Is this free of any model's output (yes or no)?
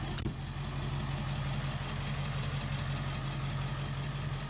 yes